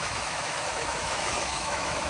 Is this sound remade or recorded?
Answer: remade